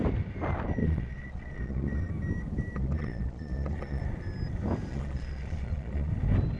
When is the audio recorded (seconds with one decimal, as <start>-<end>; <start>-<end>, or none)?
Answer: 0.0-0.8; 2.1-2.8; 4.0-4.9; 6.1-6.6